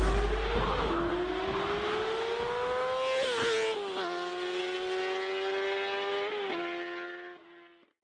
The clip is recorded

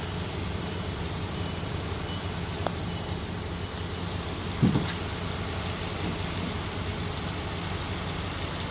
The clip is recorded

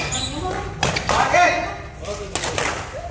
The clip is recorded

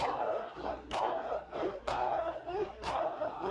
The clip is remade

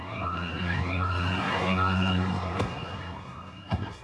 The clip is remade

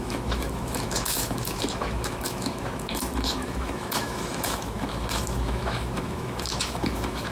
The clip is remade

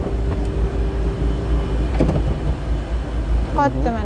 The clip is recorded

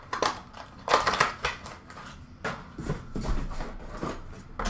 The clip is recorded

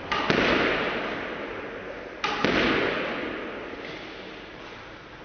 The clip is recorded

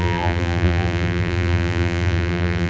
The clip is remade